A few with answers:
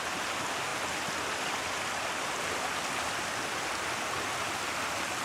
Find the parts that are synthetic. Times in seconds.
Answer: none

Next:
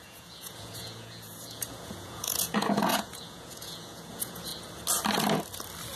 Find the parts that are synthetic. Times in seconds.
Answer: 0.0-4.5 (vocoder, Vocos)